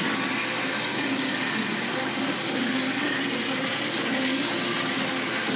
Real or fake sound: real